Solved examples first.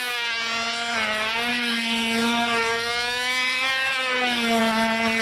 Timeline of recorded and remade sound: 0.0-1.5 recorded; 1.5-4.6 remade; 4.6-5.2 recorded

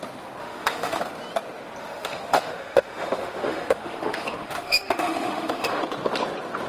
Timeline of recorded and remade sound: 0.0-0.4 recorded; 0.4-1.0 remade; 1.0-1.8 recorded; 1.8-5.8 remade; 5.8-6.7 recorded

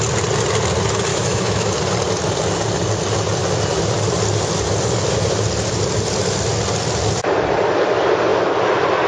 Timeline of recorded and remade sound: 0.0-1.1 recorded; 1.1-1.7 remade; 1.7-9.1 recorded

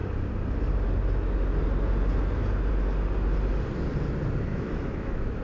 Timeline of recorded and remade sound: 0.0-4.5 recorded; 4.5-5.4 remade